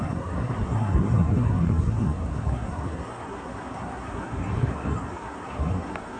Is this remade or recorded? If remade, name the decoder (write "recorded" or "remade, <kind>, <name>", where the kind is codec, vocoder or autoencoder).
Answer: remade, codec, SNAC